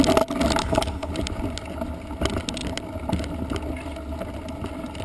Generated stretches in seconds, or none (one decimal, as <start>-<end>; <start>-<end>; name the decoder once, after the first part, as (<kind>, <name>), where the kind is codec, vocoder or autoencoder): 0.6-1.1 (codec, HILCodec)